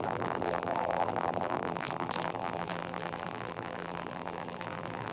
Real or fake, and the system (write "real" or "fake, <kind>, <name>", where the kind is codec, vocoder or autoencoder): fake, vocoder, BigVGAN v2